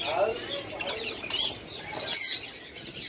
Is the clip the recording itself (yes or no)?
yes